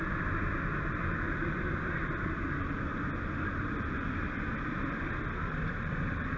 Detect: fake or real fake